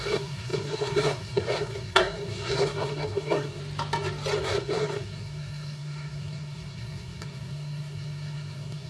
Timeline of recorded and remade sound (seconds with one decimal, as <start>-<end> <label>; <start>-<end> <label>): 0.0-3.6 remade; 3.6-4.4 recorded; 4.4-8.9 remade